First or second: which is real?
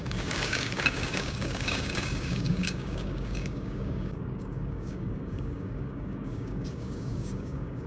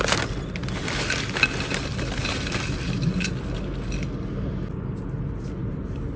second